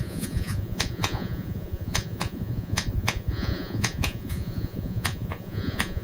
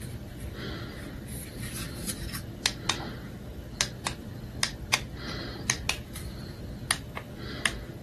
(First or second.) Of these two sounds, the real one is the second